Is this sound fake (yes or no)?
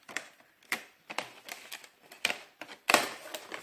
yes